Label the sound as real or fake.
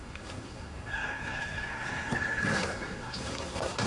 fake